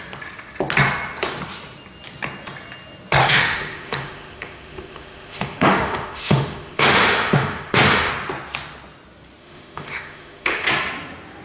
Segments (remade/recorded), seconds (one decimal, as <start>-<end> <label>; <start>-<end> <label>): 0.0-3.2 recorded; 3.2-8.1 remade; 8.1-9.4 recorded; 9.4-10.7 remade; 10.7-11.4 recorded